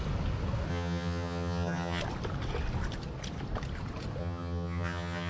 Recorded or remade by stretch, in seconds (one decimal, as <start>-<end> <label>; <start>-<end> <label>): 0.0-0.7 recorded; 0.7-2.0 remade; 2.0-4.2 recorded; 4.2-5.3 remade